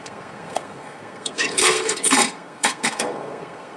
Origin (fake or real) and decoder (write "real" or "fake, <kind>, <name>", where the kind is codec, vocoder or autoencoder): fake, codec, SNAC